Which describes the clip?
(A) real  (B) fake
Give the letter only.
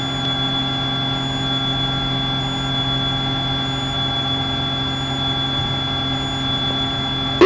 A